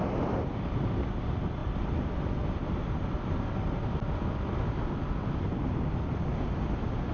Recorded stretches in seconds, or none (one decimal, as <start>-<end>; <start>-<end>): 0.0-7.1